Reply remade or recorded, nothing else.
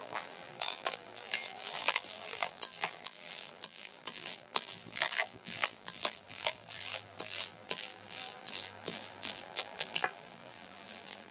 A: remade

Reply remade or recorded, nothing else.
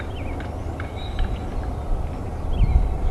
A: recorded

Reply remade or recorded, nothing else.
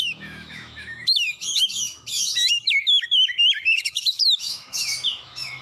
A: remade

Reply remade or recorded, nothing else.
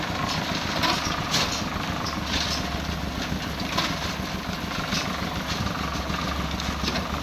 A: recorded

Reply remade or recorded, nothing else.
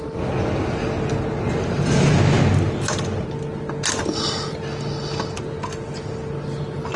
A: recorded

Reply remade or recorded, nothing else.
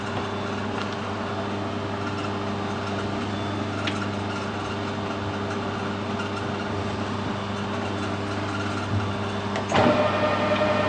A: recorded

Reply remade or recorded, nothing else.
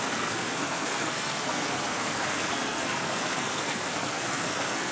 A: remade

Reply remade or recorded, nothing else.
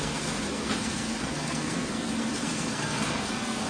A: remade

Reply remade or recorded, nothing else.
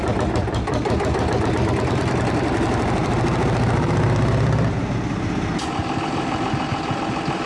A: remade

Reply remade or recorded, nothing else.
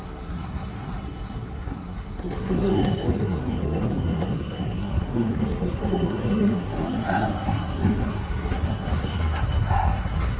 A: remade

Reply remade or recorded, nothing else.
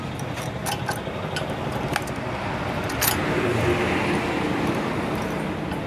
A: recorded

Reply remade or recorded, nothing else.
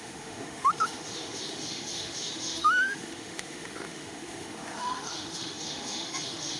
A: remade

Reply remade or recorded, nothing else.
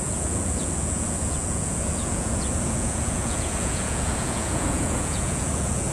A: remade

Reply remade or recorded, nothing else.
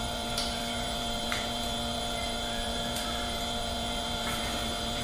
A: remade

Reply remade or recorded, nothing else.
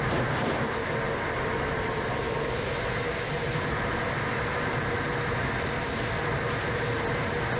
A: recorded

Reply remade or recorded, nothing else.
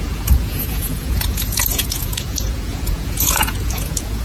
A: remade